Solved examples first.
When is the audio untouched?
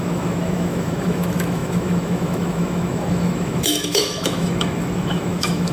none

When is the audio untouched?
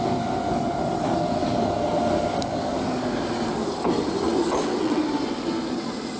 0.0-4.5; 5.0-6.2